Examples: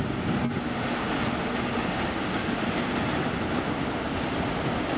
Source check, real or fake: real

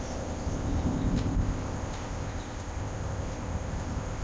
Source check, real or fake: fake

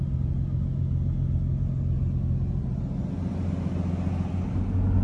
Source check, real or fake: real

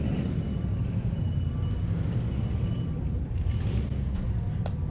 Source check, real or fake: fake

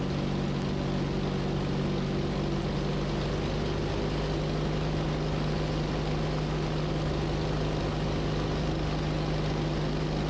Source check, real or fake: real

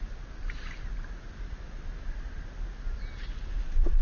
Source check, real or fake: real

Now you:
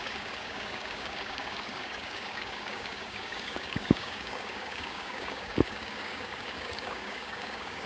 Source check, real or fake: fake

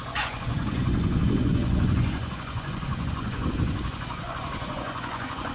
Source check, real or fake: fake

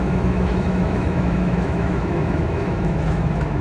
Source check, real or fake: fake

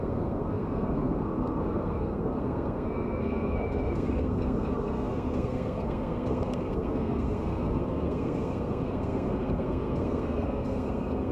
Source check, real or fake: fake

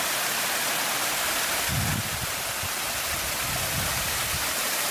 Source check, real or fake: real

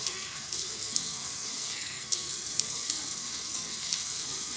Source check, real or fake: fake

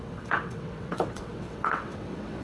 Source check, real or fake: fake